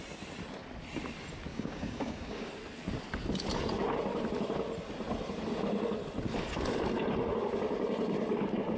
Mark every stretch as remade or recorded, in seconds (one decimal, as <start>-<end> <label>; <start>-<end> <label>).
0.0-1.5 recorded; 1.5-2.5 remade; 2.5-8.8 recorded